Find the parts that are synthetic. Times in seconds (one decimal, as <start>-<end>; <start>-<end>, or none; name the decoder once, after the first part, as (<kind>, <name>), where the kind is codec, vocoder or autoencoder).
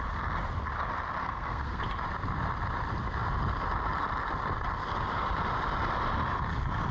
1.2-1.8 (codec, SNAC)